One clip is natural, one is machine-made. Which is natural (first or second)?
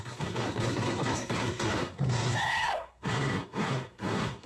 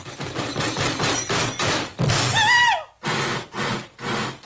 second